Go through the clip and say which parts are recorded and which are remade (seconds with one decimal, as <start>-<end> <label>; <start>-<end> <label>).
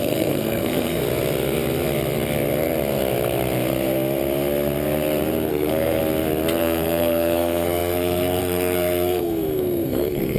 0.0-1.0 remade; 1.0-5.5 recorded; 5.5-6.0 remade; 6.0-6.6 recorded; 6.6-10.4 remade